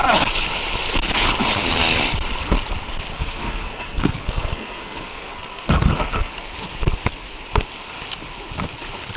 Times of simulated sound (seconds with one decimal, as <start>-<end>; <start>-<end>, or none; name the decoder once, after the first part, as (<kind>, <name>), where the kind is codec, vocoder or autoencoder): 3.1-6.3 (codec, SNAC)